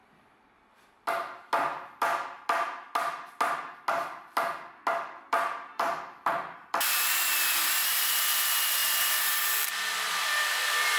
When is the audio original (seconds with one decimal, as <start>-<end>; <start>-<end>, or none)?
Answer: 0.0-5.2